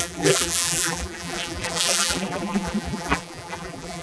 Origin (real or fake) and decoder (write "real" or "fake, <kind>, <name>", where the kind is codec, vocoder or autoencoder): fake, vocoder, BigVGAN v2